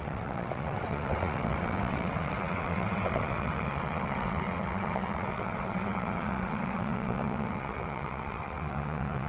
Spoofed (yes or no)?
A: yes